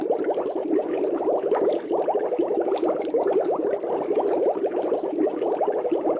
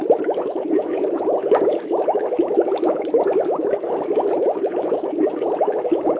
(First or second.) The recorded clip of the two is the first